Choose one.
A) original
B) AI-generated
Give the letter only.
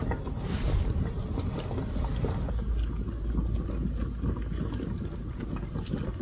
A